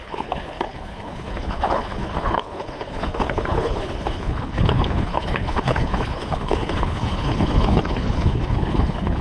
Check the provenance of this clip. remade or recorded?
remade